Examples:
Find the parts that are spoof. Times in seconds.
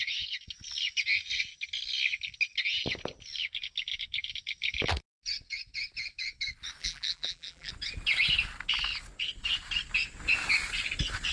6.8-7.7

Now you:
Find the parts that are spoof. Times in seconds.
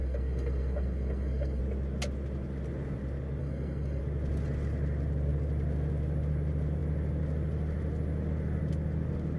0.0-1.6; 3.4-4.0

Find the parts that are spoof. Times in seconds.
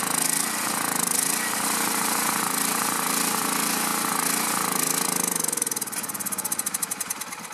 0.0-3.9; 4.6-7.5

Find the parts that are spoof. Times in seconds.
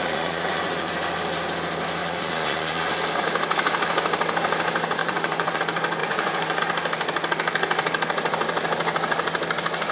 0.0-0.9; 2.0-2.9; 5.0-5.6; 6.0-6.6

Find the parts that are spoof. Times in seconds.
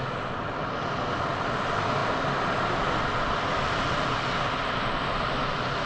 none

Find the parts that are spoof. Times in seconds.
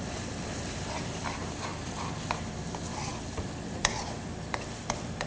0.0-5.3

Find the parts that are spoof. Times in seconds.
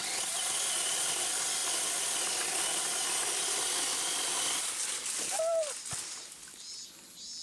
none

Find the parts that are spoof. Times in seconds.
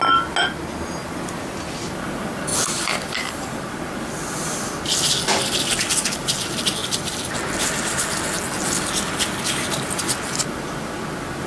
none